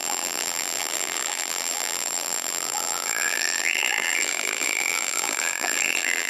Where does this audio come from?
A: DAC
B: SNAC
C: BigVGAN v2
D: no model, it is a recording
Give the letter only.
C